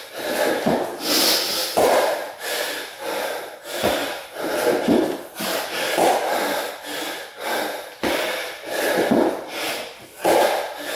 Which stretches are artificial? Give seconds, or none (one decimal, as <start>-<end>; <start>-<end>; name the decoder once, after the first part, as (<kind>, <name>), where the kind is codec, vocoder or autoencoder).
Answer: 1.6-3.4 (vocoder, BigVGAN v2); 4.0-6.0